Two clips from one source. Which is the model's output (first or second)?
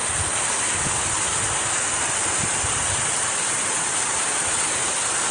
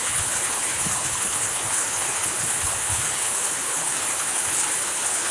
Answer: second